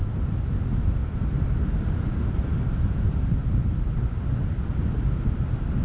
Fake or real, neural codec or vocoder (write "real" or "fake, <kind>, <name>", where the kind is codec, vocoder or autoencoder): real